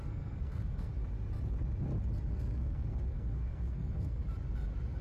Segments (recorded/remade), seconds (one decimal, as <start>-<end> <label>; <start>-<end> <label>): 0.0-0.9 remade; 0.9-2.3 recorded; 2.3-4.2 remade; 4.2-5.0 recorded